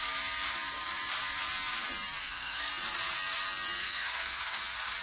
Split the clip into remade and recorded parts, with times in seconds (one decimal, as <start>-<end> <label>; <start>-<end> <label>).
0.0-2.2 recorded; 2.2-2.7 remade; 2.7-3.8 recorded; 3.8-4.6 remade; 4.6-5.0 recorded

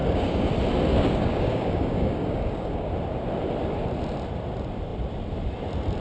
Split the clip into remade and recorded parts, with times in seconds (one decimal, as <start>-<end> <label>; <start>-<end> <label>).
0.0-0.5 remade; 0.5-0.9 recorded; 0.9-2.9 remade; 2.9-6.0 recorded